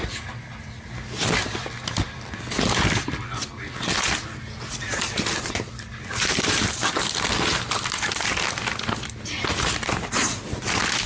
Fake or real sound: real